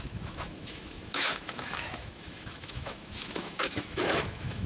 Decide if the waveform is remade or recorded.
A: remade